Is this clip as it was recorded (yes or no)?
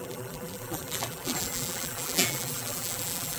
no